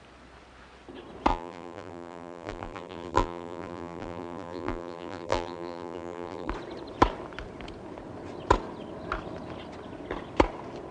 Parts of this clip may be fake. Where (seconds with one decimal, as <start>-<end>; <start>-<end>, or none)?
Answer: 1.3-6.5